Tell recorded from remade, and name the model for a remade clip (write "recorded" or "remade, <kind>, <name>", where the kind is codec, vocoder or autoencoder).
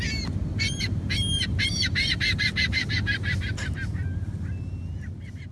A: recorded